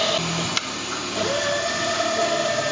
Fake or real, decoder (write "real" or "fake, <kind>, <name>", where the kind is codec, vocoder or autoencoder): real